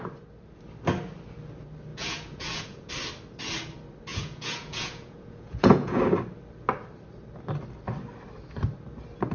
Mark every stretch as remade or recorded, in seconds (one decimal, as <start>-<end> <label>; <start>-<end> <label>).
0.0-1.9 recorded; 1.9-2.9 remade; 2.9-4.1 recorded; 4.1-6.0 remade; 6.0-9.3 recorded